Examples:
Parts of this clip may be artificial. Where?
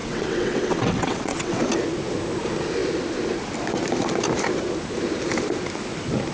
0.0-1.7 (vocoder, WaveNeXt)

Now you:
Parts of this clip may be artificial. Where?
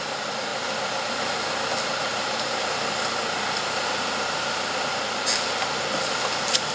none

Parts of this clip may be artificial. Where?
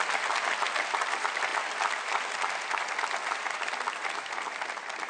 none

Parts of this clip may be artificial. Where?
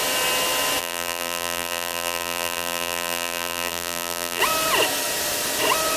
0.8-4.4 (vocoder, BigVGAN v2)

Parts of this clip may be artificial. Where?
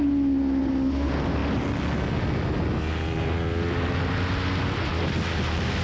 none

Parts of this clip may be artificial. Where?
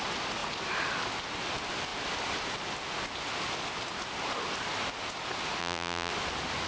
5.6-6.1 (vocoder, BigVGAN v2)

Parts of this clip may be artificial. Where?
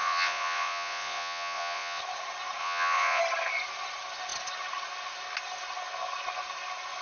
0.0-2.0 (vocoder, Vocos); 2.6-3.2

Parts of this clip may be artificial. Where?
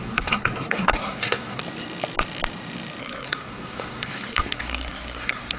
0.0-1.6 (codec, SNAC); 3.0-5.6